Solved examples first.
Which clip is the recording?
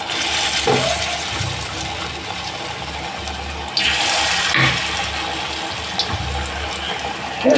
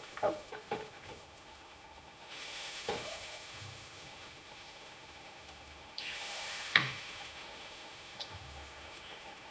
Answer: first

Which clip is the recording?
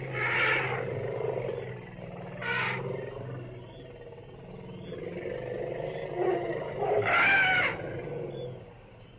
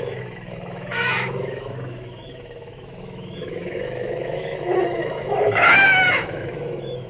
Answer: first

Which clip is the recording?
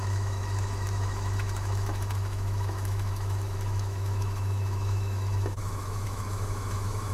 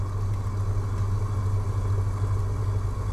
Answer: second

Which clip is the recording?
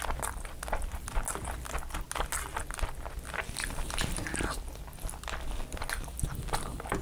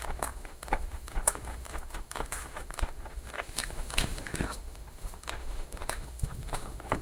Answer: first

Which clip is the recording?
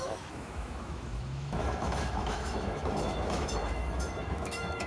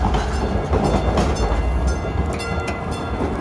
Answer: second